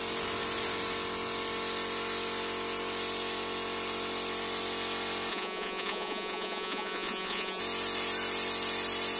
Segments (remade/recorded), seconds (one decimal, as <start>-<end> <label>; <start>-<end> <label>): 0.0-5.3 recorded; 5.3-7.6 remade; 7.6-9.2 recorded